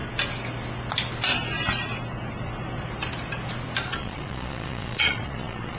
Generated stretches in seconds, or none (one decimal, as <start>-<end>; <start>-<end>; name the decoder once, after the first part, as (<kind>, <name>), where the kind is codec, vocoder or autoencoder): 3.9-5.8 (vocoder, Vocos)